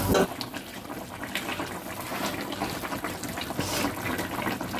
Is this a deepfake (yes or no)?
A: no